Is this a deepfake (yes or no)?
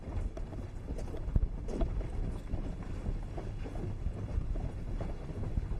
no